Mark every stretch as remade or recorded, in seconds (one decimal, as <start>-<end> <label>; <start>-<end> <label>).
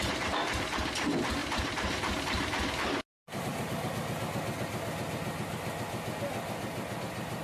0.0-1.4 recorded; 1.4-2.2 remade; 2.2-7.4 recorded